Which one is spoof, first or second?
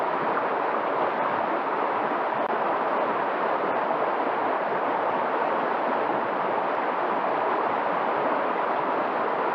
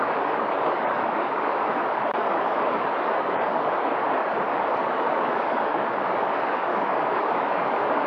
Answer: second